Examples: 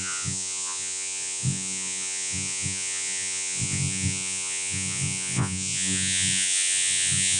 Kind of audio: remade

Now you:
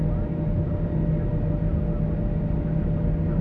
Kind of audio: recorded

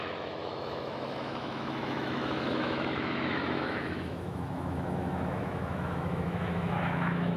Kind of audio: remade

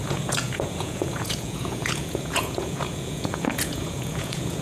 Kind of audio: remade